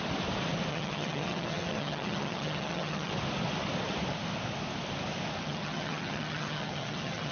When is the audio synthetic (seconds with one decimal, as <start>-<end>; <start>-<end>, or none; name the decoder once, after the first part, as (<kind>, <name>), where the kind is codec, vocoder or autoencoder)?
0.7-3.1 (vocoder, HiFi-GAN); 5.4-7.3